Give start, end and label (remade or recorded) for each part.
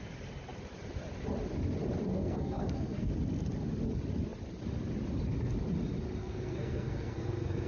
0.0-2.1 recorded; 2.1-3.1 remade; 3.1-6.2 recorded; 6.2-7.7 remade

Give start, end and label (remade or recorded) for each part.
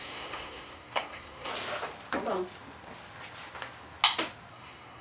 0.0-1.5 remade; 1.5-4.5 recorded; 4.5-5.0 remade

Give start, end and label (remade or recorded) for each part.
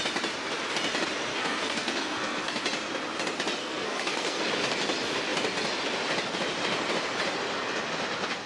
0.0-1.3 recorded; 1.3-2.6 remade; 2.6-3.6 recorded; 3.6-4.4 remade; 4.4-8.5 recorded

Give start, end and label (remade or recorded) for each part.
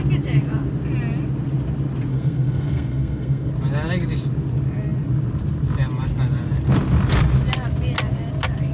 0.0-2.1 recorded; 2.1-3.5 remade; 3.5-8.7 recorded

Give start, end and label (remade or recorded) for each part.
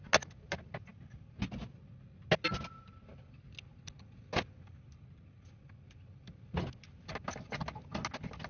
0.0-8.5 recorded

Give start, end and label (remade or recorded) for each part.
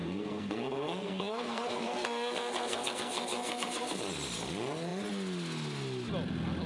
0.0-4.0 remade; 4.0-6.7 recorded